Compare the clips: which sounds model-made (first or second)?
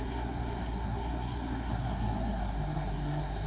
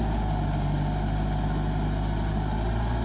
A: first